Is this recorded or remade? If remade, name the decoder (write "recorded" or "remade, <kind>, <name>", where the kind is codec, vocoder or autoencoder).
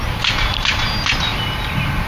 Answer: recorded